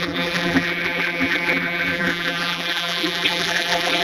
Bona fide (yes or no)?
no